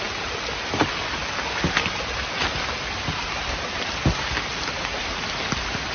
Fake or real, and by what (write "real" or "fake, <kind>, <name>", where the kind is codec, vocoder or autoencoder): real